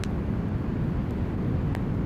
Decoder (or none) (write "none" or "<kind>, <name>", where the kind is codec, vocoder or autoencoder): none